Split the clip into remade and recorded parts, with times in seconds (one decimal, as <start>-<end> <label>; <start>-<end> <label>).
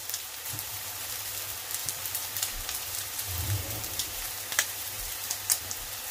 0.0-1.1 remade; 1.1-1.8 recorded; 1.8-5.5 remade; 5.5-6.1 recorded